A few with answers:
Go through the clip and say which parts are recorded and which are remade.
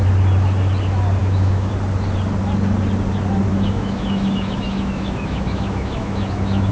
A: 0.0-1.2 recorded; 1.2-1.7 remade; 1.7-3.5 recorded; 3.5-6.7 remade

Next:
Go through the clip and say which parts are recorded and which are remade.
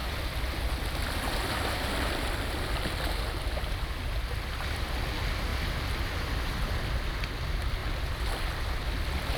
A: 0.0-9.4 recorded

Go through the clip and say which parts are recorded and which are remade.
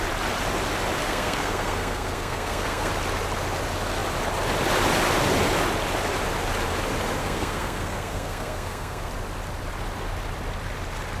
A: 0.0-1.0 recorded; 1.0-2.9 remade; 2.9-7.2 recorded; 7.2-9.1 remade; 9.1-11.2 recorded